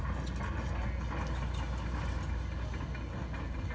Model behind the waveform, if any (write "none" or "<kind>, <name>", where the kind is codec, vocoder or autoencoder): none